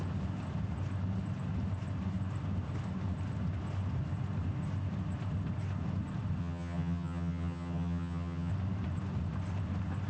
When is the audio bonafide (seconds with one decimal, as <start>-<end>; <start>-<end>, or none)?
0.0-6.4; 8.5-10.1